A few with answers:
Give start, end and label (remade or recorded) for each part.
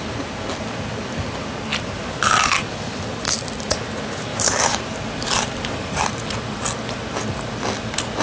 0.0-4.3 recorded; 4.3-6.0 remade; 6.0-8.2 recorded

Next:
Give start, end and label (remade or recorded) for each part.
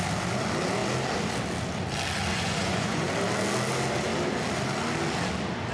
0.0-2.3 recorded; 2.3-3.1 remade; 3.1-5.7 recorded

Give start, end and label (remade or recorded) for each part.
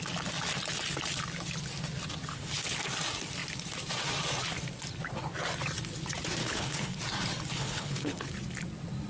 0.0-2.3 recorded; 2.3-2.8 remade; 2.8-6.4 recorded; 6.4-7.0 remade; 7.0-7.5 recorded; 7.5-8.3 remade; 8.3-9.1 recorded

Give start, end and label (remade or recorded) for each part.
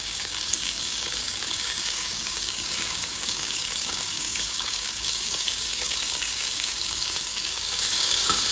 0.0-8.5 remade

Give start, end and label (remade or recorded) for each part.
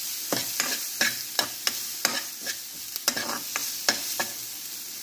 0.0-5.0 recorded